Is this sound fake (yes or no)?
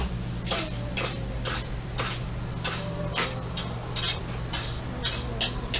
no